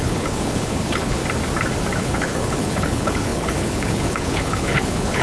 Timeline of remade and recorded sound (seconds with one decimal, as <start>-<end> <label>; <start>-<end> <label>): 0.0-1.2 remade; 1.2-2.0 recorded; 2.0-5.2 remade